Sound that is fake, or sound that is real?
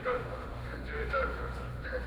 fake